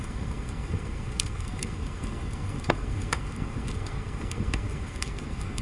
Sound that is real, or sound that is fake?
fake